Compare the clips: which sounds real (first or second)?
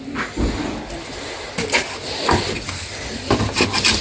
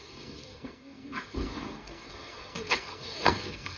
first